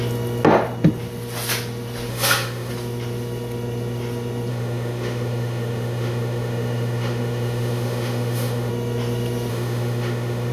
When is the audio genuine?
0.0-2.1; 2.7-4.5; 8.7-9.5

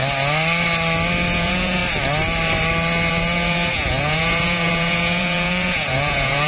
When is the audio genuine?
0.0-1.4; 1.8-3.1

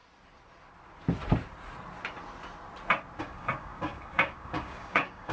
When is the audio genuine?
0.0-3.2

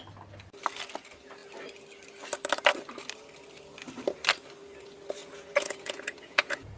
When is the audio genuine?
0.0-5.2

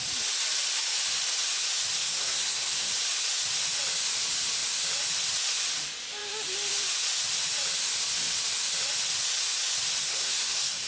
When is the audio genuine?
0.0-2.0; 2.9-10.0

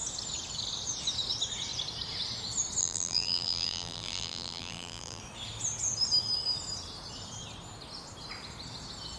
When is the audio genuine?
0.0-2.8; 5.2-9.2